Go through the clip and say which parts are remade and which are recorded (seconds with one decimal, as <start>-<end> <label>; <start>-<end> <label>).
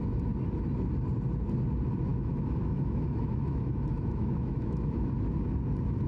0.0-2.1 recorded; 2.1-5.1 remade; 5.1-6.1 recorded